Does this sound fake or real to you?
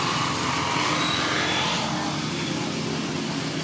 real